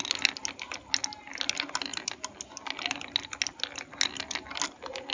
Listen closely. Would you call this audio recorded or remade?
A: recorded